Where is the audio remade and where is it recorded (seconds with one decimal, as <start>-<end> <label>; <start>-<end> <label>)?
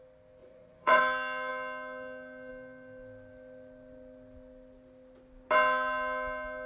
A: 0.0-0.4 recorded; 0.4-1.0 remade; 1.0-6.7 recorded